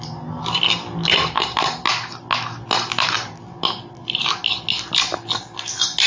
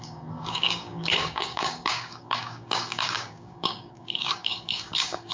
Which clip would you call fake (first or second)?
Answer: second